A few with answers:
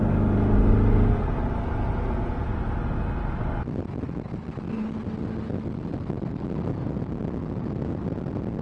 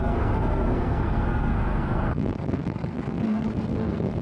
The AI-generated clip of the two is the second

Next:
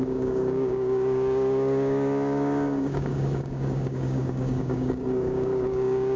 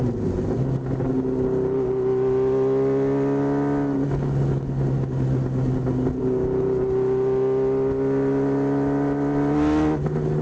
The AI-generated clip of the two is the first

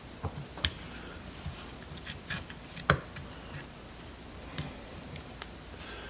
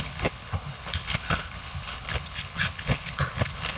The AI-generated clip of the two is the second